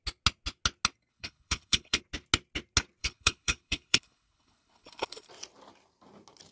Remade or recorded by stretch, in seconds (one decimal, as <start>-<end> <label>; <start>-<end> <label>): 0.0-1.1 recorded; 1.1-2.0 remade; 2.0-3.0 recorded; 3.0-5.3 remade; 5.3-6.5 recorded